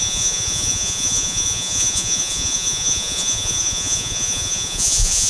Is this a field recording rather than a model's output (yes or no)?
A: no